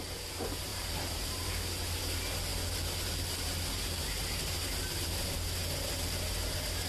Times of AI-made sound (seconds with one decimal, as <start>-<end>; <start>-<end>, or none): 0.7-1.5